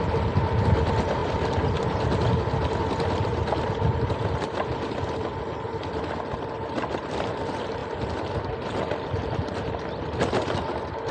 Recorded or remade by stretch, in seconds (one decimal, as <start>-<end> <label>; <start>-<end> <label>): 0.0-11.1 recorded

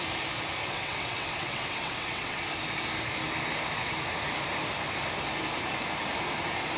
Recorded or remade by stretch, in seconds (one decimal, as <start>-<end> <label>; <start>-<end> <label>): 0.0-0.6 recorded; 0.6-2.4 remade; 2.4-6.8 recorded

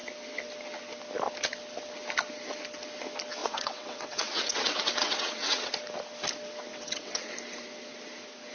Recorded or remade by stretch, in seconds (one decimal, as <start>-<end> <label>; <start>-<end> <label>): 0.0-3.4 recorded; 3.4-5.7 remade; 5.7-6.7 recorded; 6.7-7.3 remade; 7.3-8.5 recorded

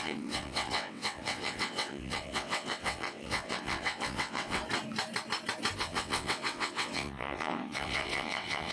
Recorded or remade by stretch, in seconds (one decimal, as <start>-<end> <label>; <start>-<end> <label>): 0.0-4.6 remade; 4.6-5.8 recorded; 5.8-8.7 remade

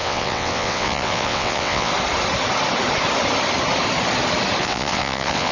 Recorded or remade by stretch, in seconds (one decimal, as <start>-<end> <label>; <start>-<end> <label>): 0.0-1.9 remade; 1.9-4.6 recorded; 4.6-5.5 remade